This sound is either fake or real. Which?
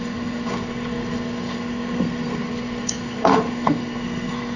fake